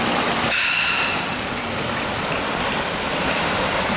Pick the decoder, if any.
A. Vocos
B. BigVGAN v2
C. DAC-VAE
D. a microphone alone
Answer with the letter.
B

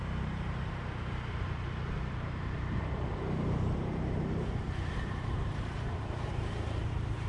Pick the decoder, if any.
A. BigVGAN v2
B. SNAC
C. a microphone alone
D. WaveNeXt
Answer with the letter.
A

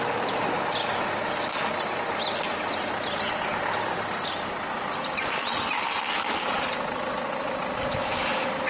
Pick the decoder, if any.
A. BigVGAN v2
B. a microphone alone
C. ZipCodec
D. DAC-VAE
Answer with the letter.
B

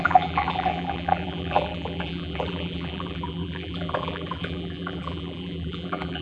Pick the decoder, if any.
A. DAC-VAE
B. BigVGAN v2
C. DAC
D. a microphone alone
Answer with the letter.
B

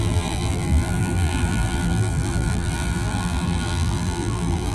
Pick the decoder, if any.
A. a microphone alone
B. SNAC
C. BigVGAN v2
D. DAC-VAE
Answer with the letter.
C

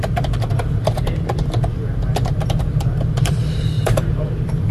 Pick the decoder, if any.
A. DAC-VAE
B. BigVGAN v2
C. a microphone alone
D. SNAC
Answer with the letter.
B